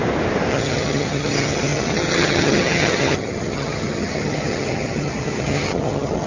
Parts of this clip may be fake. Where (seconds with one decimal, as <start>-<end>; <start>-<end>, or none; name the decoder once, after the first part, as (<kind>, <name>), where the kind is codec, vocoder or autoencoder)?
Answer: 0.5-6.3 (vocoder, HiFi-GAN)